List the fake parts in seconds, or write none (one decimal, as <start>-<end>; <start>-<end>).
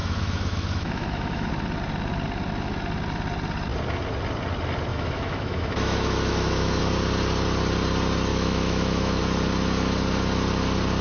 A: 0.0-1.5; 4.9-6.8; 8.3-9.2